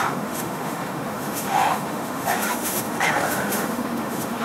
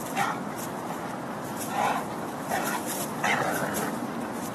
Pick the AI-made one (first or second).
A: first